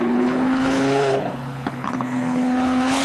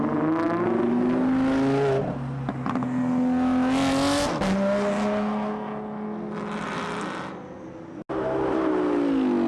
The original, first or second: second